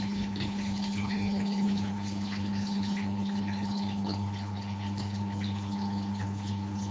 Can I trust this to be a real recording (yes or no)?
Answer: no